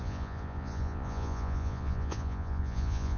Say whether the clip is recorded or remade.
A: remade